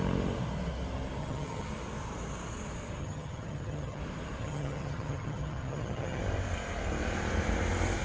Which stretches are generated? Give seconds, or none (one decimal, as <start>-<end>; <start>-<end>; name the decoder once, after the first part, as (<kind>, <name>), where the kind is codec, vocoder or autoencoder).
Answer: 1.2-1.7 (vocoder, HiFi-GAN); 3.0-4.0; 4.4-6.2